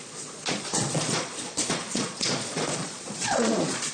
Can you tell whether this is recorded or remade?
remade